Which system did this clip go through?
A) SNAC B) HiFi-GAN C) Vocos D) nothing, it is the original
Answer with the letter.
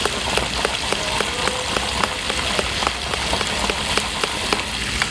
D